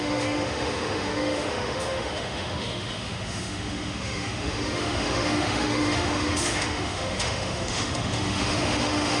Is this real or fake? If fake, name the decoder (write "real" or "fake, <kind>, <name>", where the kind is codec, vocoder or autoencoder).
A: fake, autoencoder, DAC-VAE